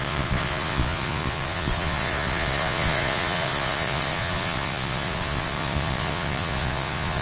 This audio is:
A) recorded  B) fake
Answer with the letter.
B